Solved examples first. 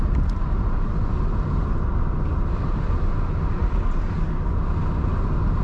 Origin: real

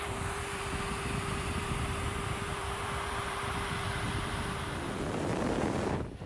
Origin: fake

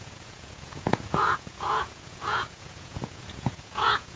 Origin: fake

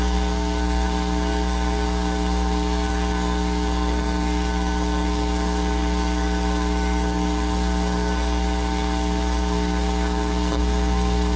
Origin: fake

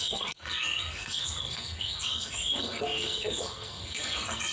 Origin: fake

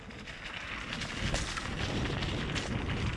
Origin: real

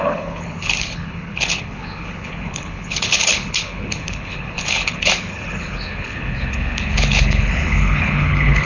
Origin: fake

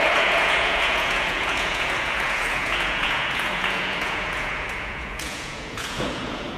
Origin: fake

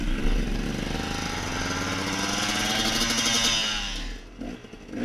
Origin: real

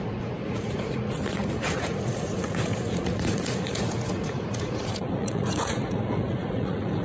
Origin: fake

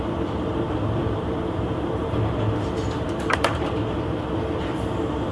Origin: fake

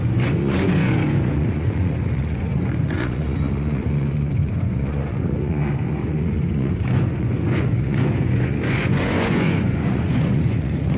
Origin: fake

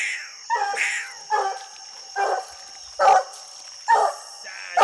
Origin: real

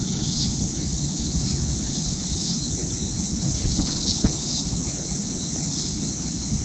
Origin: fake